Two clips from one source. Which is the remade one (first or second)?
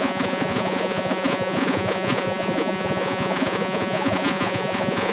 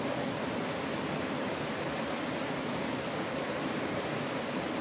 first